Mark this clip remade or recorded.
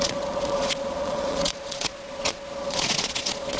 remade